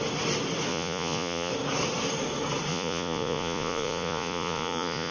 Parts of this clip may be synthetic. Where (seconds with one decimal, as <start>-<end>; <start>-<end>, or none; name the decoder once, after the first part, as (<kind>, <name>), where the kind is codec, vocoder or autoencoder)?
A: 0.7-1.5 (vocoder, Vocos); 2.7-5.1